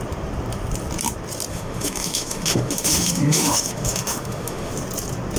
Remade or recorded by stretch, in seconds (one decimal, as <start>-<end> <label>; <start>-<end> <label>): 0.0-1.5 recorded; 1.5-4.7 remade; 4.7-5.4 recorded